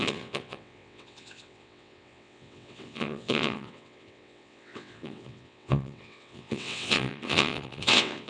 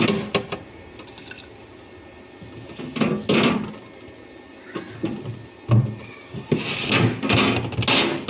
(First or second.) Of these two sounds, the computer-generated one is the first